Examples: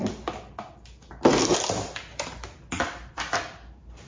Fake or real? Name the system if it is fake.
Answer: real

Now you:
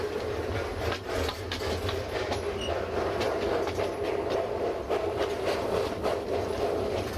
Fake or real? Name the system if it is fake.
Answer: real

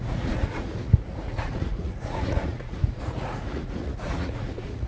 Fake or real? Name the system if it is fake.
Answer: fake, vocoder, Vocos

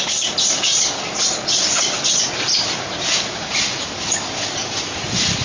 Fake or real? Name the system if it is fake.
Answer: real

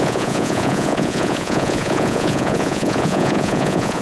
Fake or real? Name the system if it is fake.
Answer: fake, vocoder, Vocos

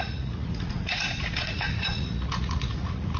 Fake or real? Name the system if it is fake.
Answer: fake, vocoder, Vocos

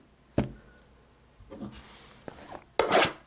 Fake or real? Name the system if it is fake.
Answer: real